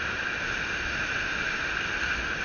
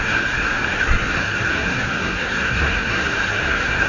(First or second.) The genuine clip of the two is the first